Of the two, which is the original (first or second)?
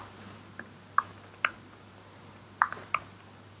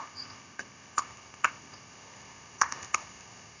first